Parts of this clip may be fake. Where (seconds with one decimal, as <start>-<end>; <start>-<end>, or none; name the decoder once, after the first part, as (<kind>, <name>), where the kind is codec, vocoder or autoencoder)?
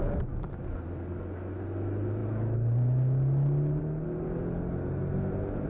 none